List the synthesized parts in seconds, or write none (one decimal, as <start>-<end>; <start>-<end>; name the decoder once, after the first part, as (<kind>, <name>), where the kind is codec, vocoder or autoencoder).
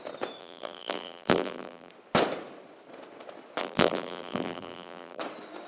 0.4-1.9 (vocoder, BigVGAN v2); 3.6-5.2